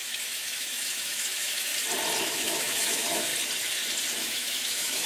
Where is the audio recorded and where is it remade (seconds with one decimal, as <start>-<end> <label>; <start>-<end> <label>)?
0.0-1.7 remade; 1.7-2.2 recorded; 2.2-3.3 remade; 3.3-4.2 recorded; 4.2-5.1 remade